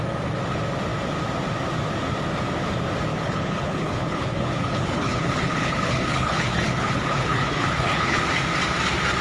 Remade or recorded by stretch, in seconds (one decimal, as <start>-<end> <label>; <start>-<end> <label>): 0.0-3.1 recorded; 3.1-8.2 remade; 8.2-9.2 recorded